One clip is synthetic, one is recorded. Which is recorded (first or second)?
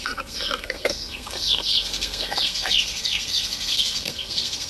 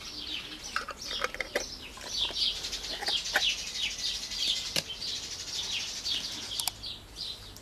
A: second